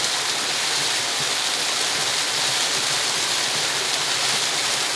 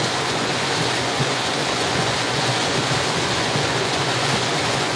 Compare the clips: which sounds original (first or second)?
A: first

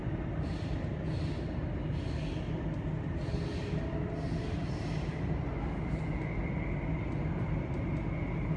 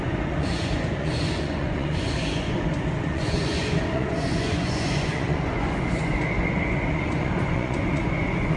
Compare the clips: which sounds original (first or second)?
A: first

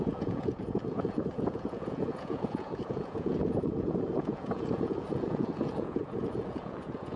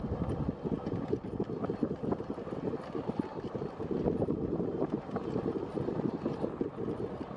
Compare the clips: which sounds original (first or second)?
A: second